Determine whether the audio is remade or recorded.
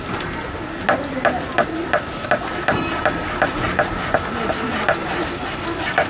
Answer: recorded